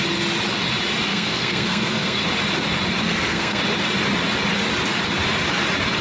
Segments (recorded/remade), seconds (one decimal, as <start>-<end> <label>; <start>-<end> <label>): 0.0-1.1 recorded; 1.1-2.2 remade; 2.2-3.0 recorded; 3.0-3.6 remade; 3.6-6.0 recorded